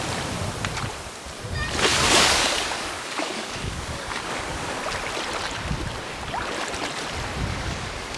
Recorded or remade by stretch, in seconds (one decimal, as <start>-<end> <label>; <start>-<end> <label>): 0.0-1.9 recorded; 1.9-4.8 remade; 4.8-7.5 recorded; 7.5-8.2 remade